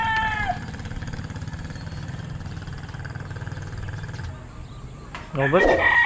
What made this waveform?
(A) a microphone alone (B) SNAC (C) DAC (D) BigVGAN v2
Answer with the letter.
A